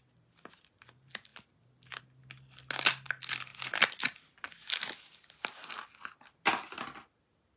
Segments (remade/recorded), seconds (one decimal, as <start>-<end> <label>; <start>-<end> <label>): 0.0-7.6 recorded